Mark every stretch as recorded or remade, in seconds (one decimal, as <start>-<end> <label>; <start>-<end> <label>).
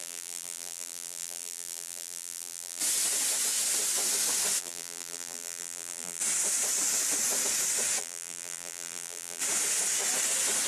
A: 0.0-2.8 remade; 2.8-4.6 recorded; 4.6-6.2 remade; 6.2-8.0 recorded; 8.0-9.4 remade; 9.4-10.7 recorded